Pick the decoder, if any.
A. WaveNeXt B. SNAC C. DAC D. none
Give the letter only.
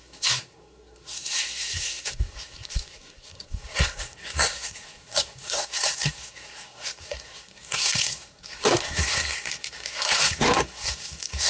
B